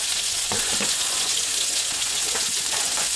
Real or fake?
fake